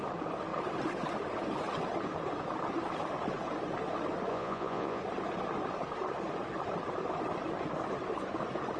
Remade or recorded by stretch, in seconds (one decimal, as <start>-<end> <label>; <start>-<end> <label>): 0.0-4.3 recorded; 4.3-5.0 remade; 5.0-8.8 recorded